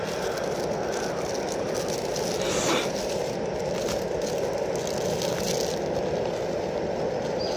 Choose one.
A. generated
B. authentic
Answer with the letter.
B